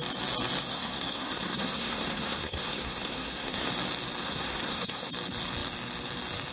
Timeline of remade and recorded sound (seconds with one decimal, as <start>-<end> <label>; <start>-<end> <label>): 0.0-0.7 recorded; 0.7-3.7 remade; 3.7-4.2 recorded; 4.2-5.1 remade; 5.1-6.5 recorded